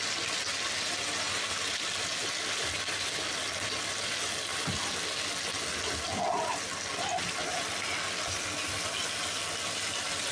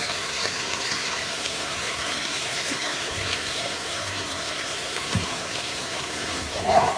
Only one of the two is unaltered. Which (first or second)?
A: first